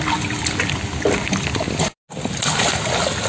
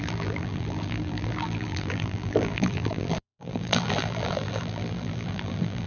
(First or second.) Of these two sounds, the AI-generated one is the second